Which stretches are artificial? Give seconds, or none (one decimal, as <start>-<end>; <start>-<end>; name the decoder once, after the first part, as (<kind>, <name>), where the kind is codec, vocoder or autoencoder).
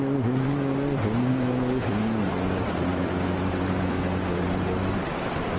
1.3-2.2 (autoencoder, DAC-VAE); 2.9-4.1